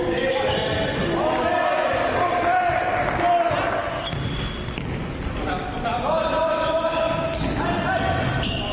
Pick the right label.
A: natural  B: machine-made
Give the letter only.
A